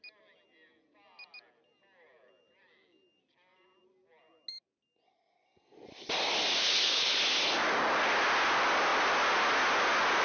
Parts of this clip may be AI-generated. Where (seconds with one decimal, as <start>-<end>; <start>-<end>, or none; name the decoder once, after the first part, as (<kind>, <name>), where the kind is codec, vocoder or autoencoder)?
6.6-7.2 (codec, HILCodec)